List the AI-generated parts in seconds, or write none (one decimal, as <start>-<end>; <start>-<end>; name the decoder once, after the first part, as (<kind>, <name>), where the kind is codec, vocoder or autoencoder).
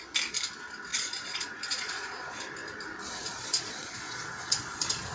0.9-2.4 (vocoder, Vocos); 3.2-5.1